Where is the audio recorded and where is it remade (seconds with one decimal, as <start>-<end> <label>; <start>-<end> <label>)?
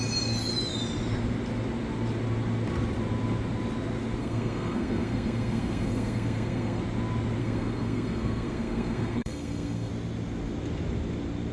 0.0-4.2 recorded; 4.2-6.8 remade; 6.8-7.4 recorded; 7.4-9.9 remade; 9.9-11.5 recorded